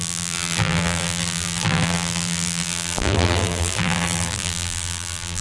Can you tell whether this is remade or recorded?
remade